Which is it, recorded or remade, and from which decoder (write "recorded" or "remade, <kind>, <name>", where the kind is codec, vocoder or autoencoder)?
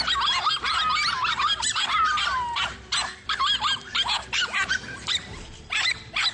recorded